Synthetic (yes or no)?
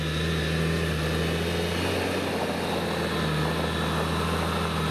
no